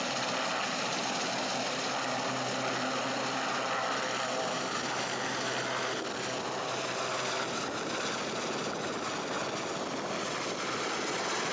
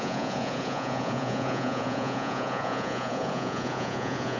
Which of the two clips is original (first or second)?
first